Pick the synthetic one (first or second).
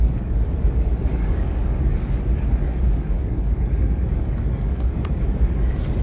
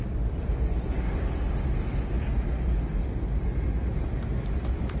first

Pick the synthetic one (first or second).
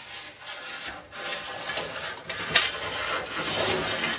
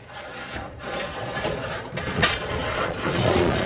second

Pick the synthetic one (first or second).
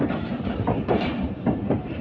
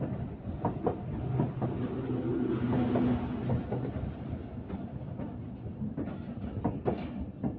first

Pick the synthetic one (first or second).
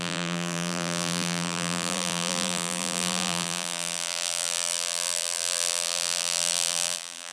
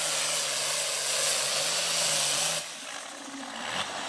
first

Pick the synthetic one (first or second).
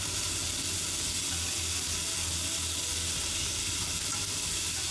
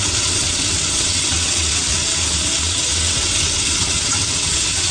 second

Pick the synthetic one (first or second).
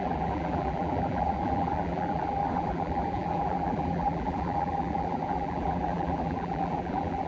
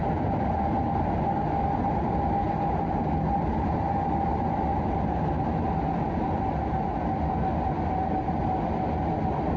first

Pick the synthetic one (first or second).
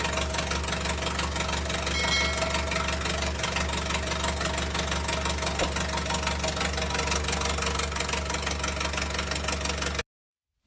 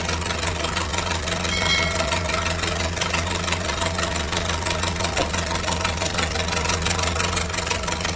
second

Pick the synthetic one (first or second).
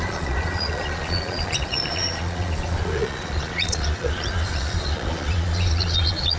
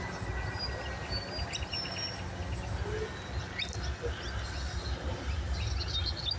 first